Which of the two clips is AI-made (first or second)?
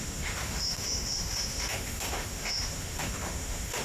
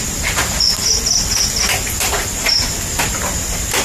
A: first